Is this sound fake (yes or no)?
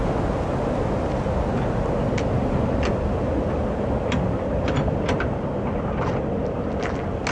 no